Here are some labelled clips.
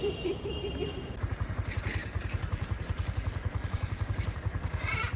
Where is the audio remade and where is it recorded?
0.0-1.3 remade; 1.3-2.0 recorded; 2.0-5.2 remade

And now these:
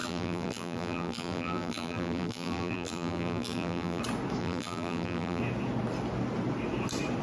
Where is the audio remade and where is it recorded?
0.0-4.0 remade; 4.0-4.4 recorded; 4.4-5.4 remade; 5.4-7.2 recorded

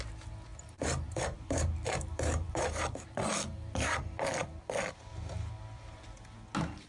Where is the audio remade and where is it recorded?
0.0-0.5 recorded; 0.5-4.0 remade; 4.0-6.9 recorded

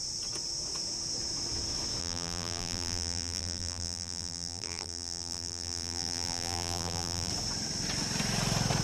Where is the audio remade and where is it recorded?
0.0-2.0 recorded; 2.0-7.3 remade; 7.3-8.8 recorded

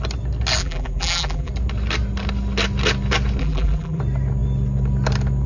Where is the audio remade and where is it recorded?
0.0-0.6 recorded; 0.6-1.5 remade; 1.5-3.4 recorded; 3.4-4.0 remade; 4.0-5.5 recorded

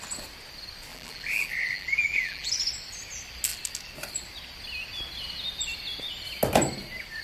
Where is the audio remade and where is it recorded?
0.0-0.9 recorded; 0.9-2.5 remade; 2.5-7.2 recorded

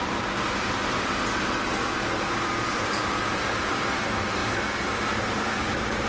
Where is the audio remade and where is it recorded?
0.0-1.7 remade; 1.7-2.7 recorded; 2.7-4.4 remade; 4.4-4.9 recorded; 4.9-6.1 remade

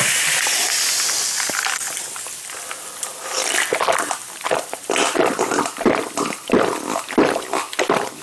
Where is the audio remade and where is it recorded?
0.0-4.2 recorded; 4.2-7.0 remade; 7.0-8.2 recorded